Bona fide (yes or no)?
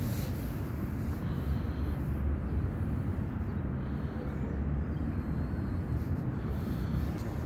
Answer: no